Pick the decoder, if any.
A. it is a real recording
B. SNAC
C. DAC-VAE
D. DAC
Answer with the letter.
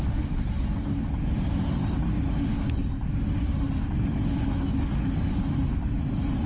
A